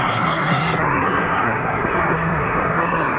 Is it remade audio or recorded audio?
remade